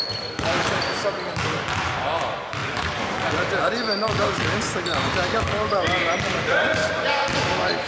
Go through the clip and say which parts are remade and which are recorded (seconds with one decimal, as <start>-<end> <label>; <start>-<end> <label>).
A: 0.0-7.9 recorded

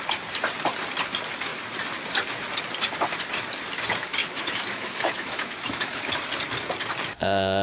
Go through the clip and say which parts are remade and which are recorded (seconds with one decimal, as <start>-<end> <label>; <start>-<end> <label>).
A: 0.0-4.2 recorded; 4.2-6.1 remade; 6.1-7.6 recorded

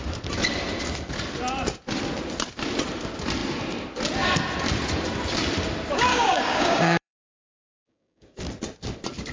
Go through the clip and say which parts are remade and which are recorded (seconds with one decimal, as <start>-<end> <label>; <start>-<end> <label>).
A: 0.0-6.1 recorded; 6.1-8.4 remade; 8.4-9.3 recorded

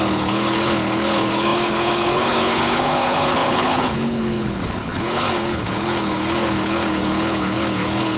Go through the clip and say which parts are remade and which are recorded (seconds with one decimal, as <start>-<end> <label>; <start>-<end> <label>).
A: 0.0-8.2 remade

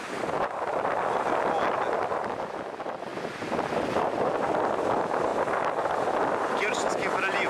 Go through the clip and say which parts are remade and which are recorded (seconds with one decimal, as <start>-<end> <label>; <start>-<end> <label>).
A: 0.0-3.1 recorded; 3.1-3.7 remade; 3.7-7.5 recorded

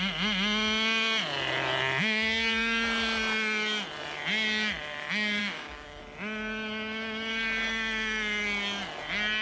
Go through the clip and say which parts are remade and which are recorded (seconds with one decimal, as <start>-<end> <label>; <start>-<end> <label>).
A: 0.0-5.4 recorded; 5.4-6.0 remade; 6.0-9.4 recorded

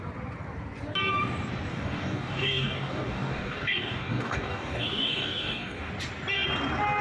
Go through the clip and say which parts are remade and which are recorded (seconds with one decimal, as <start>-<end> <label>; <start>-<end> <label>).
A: 0.0-1.7 recorded; 1.7-5.9 remade; 5.9-7.0 recorded

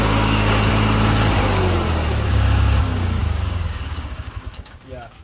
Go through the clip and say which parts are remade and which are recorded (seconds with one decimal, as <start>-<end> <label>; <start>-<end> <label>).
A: 0.0-0.7 remade; 0.7-2.8 recorded; 2.8-5.2 remade